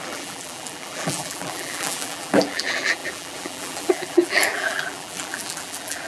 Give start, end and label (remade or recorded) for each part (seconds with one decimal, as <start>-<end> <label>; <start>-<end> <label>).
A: 0.0-6.1 remade